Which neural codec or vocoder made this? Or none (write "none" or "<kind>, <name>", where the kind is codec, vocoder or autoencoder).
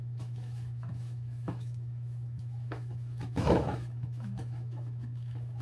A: autoencoder, DAC-VAE